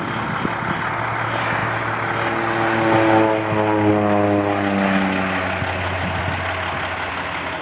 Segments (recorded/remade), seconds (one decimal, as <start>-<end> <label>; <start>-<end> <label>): 0.0-7.6 recorded